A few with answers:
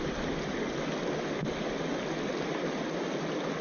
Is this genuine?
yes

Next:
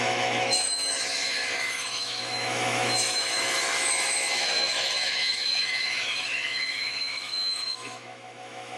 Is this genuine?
no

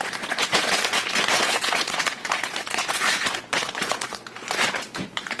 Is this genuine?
no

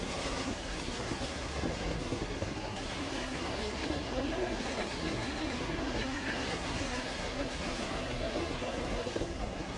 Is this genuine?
no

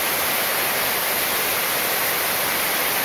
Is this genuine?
yes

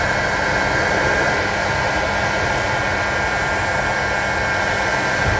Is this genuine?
yes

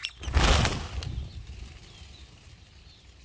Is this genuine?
yes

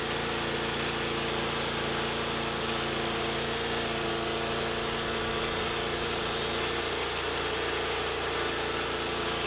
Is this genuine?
yes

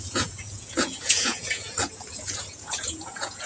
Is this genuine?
no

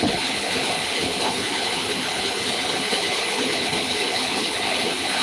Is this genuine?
no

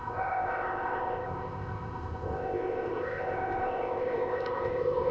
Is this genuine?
no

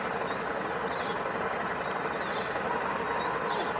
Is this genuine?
yes